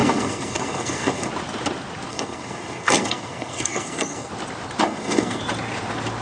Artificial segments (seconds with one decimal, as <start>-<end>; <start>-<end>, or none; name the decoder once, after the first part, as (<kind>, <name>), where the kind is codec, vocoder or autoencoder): 0.0-1.3 (codec, SNAC); 2.1-4.3; 4.8-5.4